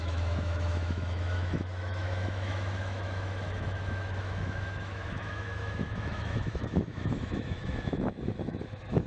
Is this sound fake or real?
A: fake